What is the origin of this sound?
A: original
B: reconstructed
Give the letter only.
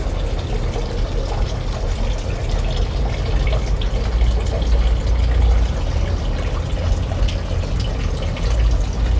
A